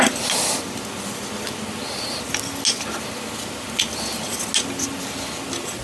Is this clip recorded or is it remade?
recorded